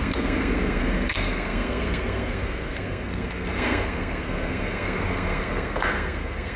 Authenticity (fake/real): fake